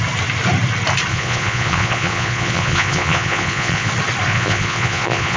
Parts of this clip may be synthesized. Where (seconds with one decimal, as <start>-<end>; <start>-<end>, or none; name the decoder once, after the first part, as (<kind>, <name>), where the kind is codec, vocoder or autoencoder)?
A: 1.1-3.9 (vocoder, Vocos); 4.3-5.4